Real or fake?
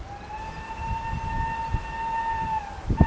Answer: real